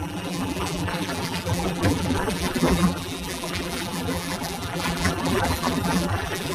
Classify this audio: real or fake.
fake